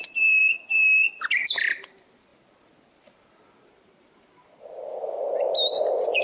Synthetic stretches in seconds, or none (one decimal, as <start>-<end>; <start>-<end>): none